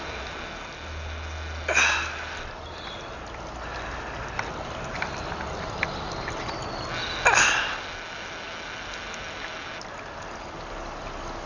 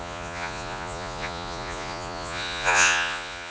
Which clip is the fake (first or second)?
second